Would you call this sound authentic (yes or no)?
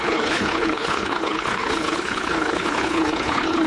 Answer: no